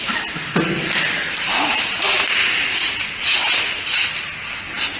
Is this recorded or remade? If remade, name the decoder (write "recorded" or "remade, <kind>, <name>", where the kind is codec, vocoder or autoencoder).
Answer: recorded